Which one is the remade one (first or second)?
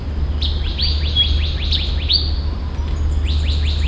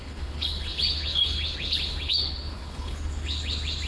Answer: second